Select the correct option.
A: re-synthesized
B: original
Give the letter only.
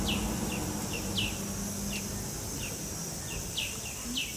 B